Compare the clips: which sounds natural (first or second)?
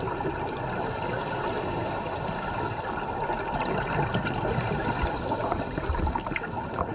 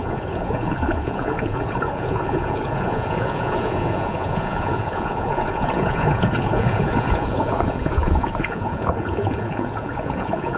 first